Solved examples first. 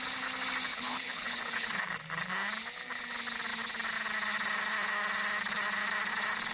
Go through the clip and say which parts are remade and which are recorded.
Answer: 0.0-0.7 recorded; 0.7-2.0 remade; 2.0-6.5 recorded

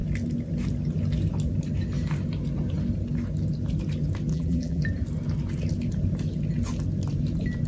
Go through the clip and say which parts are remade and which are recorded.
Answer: 0.0-4.3 recorded; 4.3-4.8 remade; 4.8-7.7 recorded

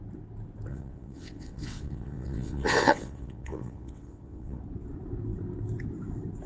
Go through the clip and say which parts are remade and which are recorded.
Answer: 0.0-0.7 recorded; 0.7-4.6 remade; 4.6-6.5 recorded

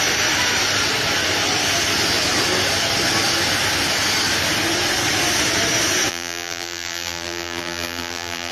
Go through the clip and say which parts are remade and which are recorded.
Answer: 0.0-6.1 recorded; 6.1-8.5 remade

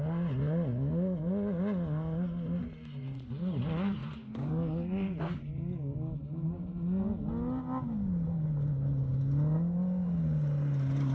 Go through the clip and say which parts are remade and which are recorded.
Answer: 0.0-11.1 recorded

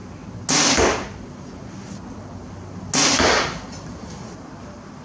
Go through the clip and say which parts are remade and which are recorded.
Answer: 0.0-3.0 recorded; 3.0-5.0 remade